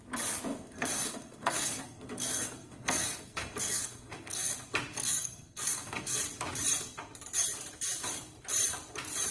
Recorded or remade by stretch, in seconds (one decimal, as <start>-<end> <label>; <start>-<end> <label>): 0.0-0.5 recorded; 0.5-4.5 remade; 4.5-4.9 recorded; 4.9-6.2 remade; 6.2-9.3 recorded

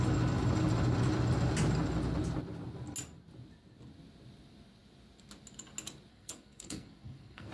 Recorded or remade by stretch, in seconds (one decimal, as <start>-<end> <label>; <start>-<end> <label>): 0.0-6.1 recorded; 6.1-7.5 remade

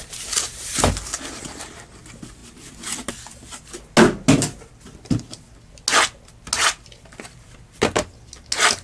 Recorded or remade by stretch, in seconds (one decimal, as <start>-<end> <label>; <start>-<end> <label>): 0.0-8.8 recorded

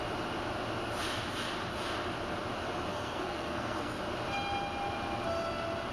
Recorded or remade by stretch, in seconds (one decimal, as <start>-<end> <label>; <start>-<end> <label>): 0.0-2.9 recorded; 2.9-4.0 remade; 4.0-5.9 recorded

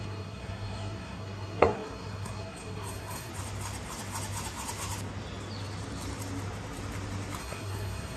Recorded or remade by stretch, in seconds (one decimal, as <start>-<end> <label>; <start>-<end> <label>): 0.0-3.3 remade; 3.3-7.4 recorded; 7.4-8.2 remade

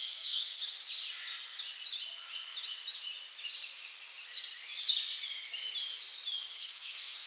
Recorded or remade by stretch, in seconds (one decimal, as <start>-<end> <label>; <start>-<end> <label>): 0.0-0.6 remade; 0.6-6.5 recorded; 6.5-7.3 remade